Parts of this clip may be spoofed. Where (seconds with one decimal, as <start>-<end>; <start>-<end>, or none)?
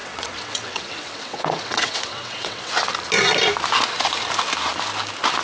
0.0-2.7